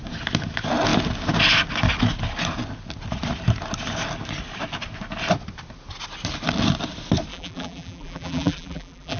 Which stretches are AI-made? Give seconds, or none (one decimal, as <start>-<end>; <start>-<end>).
7.3-9.2